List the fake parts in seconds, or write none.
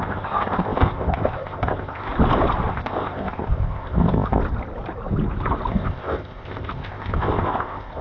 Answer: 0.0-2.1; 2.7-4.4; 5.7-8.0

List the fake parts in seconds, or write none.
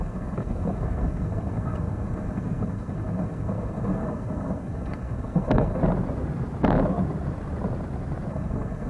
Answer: 0.0-5.8; 8.3-8.9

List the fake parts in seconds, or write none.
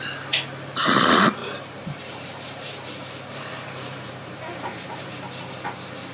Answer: 1.4-5.1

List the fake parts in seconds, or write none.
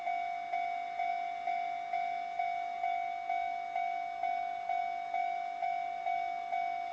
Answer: 0.0-6.9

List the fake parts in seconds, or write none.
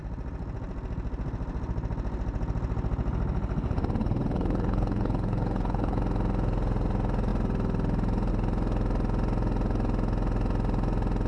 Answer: 4.0-6.0